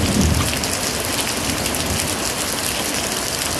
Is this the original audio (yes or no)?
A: yes